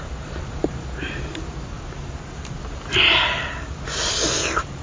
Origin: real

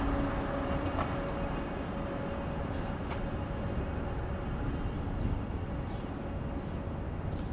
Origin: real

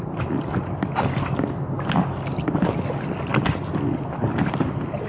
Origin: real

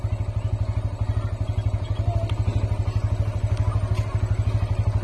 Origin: real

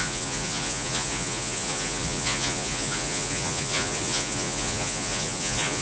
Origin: fake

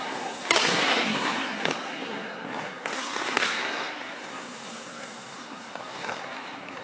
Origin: fake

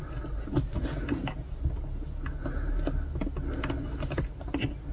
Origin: real